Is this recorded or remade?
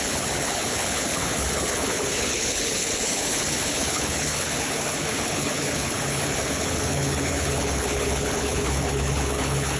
remade